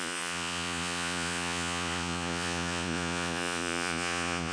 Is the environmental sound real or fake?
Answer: fake